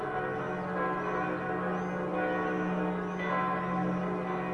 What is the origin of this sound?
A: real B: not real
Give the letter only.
A